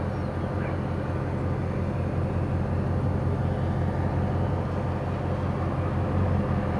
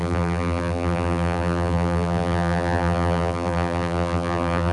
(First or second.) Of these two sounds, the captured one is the first